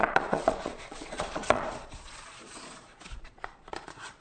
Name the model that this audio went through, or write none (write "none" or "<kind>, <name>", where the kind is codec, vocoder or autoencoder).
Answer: vocoder, Vocos